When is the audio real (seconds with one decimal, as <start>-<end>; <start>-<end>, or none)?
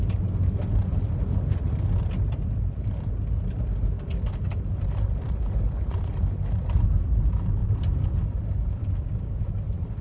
0.0-8.8; 9.4-10.0